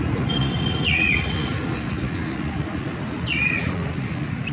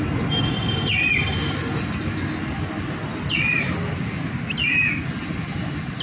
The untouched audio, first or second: second